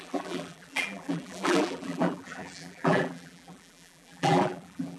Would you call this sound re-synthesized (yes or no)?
yes